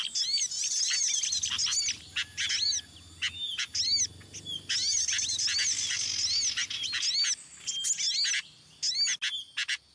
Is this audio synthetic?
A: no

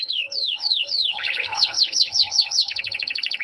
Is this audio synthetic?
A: yes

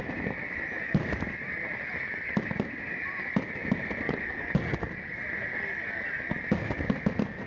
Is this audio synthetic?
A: no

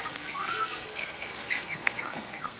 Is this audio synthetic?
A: yes